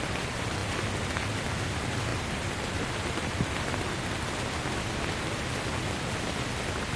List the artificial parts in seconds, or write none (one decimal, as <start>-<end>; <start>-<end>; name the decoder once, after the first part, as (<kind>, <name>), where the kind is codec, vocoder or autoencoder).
0.0-0.6 (vocoder, BigVGAN v2); 1.1-7.0